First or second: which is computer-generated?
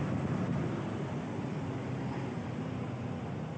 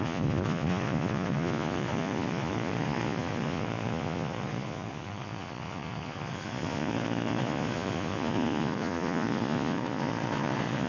second